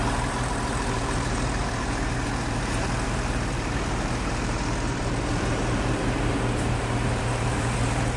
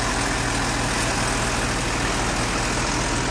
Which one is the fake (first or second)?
first